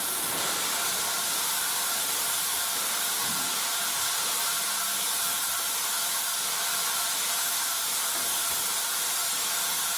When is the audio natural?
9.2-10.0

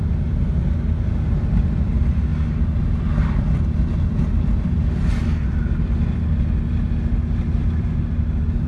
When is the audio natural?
0.0-8.7

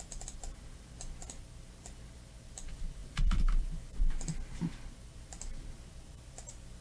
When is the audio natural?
none

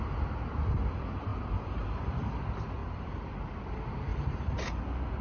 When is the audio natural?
0.0-1.3; 2.3-2.8; 3.5-4.1; 4.8-5.2

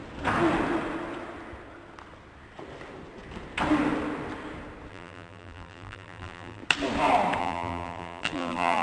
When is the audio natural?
0.0-4.9; 6.6-7.4

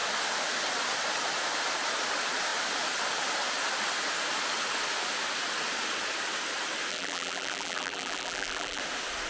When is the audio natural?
0.0-6.9; 8.8-9.3

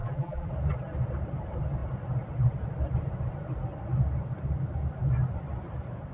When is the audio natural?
0.5-6.1